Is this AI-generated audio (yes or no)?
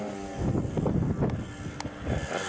no